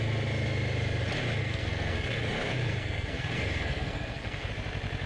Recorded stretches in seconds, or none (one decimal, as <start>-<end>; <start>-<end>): 0.0-1.4; 4.5-5.1

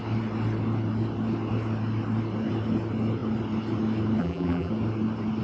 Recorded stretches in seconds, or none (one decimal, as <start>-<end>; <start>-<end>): 0.0-4.2; 4.7-5.4

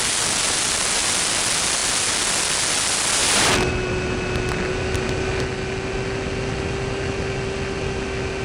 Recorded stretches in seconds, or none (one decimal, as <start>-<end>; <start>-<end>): 0.0-8.4

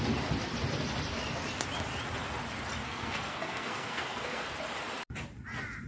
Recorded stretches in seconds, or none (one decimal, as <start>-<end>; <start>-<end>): 0.0-2.8; 4.5-5.9

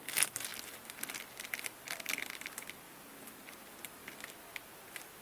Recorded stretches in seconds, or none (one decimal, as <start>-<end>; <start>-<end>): 0.0-5.2